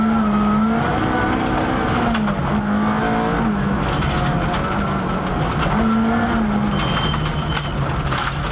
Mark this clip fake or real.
real